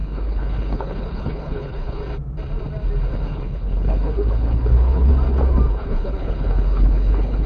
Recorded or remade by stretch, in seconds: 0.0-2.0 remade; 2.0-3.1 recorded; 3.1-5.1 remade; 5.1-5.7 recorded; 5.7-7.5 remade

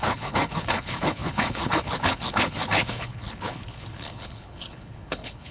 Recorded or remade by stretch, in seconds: 0.0-5.5 remade

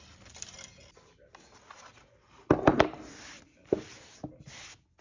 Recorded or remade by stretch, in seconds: 0.0-5.0 recorded